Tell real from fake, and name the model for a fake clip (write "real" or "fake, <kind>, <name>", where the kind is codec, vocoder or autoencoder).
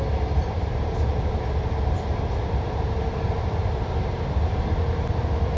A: real